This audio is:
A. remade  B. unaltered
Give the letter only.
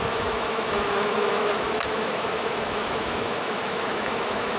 A